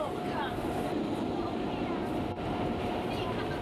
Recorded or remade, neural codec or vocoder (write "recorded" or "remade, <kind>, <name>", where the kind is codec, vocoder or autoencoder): recorded